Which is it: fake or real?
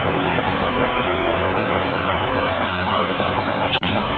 fake